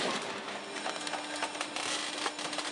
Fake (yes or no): no